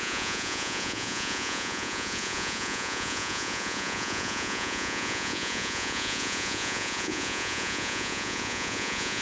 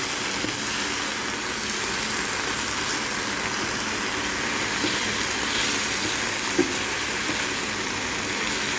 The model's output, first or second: first